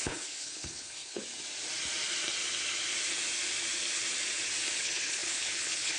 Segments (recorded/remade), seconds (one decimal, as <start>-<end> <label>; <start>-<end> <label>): 0.0-1.2 remade; 1.2-4.8 recorded; 4.8-6.0 remade

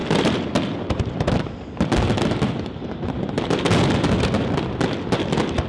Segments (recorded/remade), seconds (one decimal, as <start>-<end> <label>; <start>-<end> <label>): 0.0-2.4 remade; 2.4-5.7 recorded

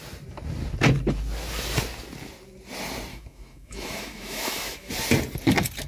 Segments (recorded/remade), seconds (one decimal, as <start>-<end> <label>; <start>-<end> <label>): 0.0-3.1 recorded; 3.1-4.9 remade; 4.9-5.9 recorded